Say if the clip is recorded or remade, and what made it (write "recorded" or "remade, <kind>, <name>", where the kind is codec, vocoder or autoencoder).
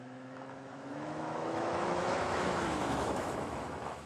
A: remade, autoencoder, DAC-VAE